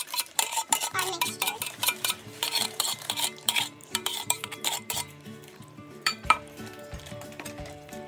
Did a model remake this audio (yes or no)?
yes